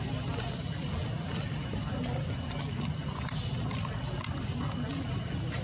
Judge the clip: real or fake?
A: real